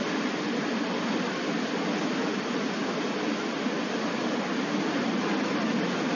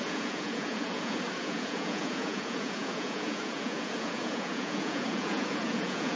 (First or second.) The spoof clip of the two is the second